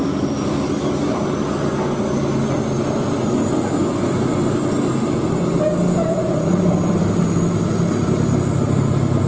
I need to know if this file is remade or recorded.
recorded